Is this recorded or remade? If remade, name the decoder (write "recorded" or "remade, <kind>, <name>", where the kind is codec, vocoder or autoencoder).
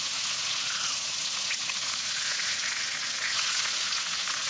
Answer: remade, vocoder, Vocos